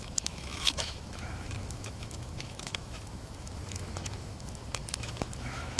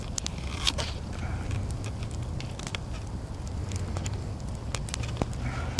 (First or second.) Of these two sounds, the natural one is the second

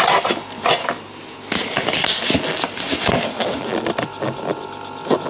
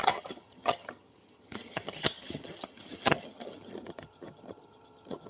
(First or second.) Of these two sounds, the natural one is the first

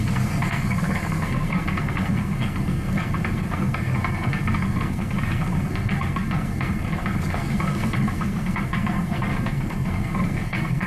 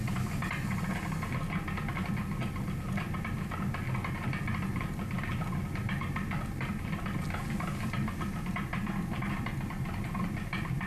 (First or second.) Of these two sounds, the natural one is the second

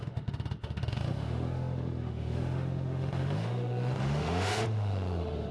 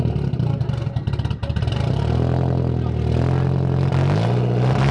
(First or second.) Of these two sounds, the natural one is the second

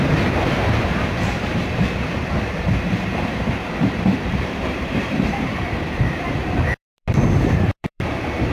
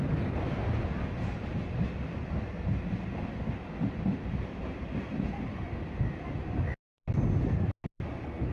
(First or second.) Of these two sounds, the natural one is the second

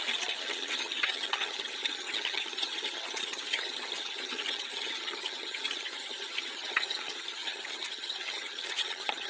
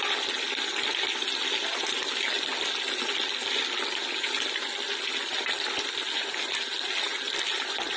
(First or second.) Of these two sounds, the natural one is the second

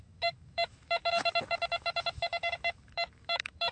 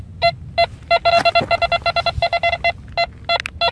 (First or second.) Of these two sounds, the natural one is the second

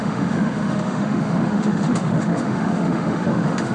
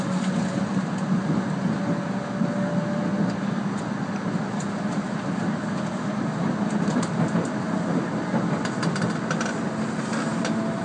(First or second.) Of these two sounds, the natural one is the second